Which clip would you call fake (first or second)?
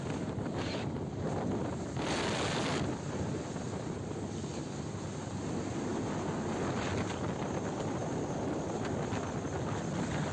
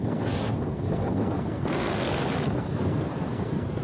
second